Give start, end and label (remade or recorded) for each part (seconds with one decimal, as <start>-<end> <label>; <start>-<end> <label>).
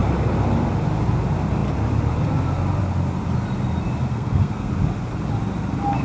0.0-4.1 recorded; 4.1-4.7 remade; 4.7-6.0 recorded